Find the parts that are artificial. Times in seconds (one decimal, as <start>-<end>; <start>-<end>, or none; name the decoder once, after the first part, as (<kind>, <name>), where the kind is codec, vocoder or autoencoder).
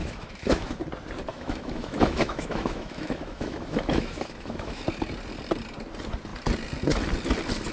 0.0-0.8 (autoencoder, DAC-VAE); 1.3-4.8